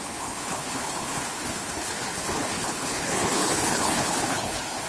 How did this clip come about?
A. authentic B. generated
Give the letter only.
B